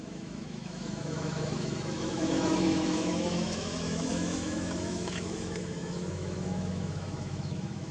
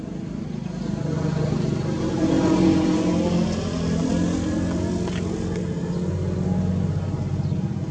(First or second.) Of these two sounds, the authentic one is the second